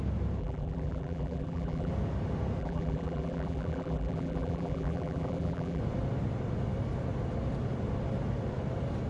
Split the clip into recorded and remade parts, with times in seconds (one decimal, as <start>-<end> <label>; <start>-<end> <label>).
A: 0.0-0.4 recorded; 0.4-1.9 remade; 1.9-2.6 recorded; 2.6-5.8 remade; 5.8-9.1 recorded